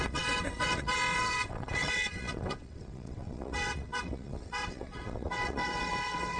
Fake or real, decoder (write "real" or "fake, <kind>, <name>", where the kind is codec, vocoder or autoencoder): fake, vocoder, WaveNeXt